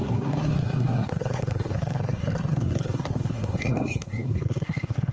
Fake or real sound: fake